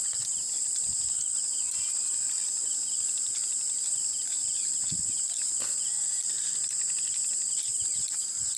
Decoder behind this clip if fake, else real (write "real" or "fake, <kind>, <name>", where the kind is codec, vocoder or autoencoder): real